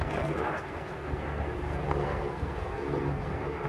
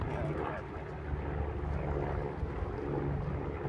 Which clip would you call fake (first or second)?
first